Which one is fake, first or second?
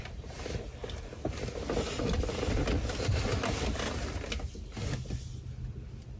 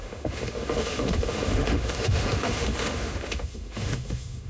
second